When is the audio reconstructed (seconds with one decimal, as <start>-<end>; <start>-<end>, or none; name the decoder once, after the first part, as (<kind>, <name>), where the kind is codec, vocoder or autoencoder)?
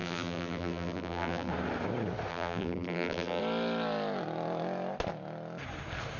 0.0-1.5 (vocoder, BigVGAN v2); 2.3-3.4